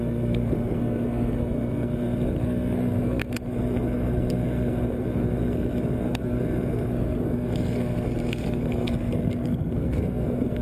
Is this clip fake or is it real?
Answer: fake